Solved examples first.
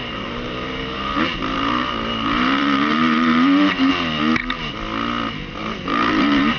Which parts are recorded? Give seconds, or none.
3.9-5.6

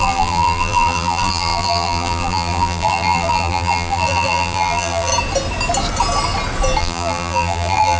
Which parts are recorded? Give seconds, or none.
5.1-6.8

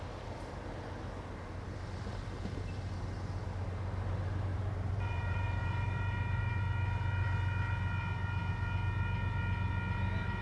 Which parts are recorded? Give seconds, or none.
0.0-4.5; 6.6-10.4